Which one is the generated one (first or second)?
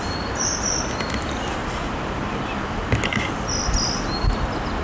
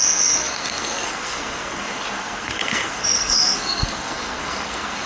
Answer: second